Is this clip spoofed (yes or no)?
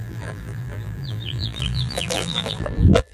yes